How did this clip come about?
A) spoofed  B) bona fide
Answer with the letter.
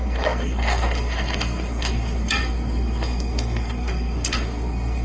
A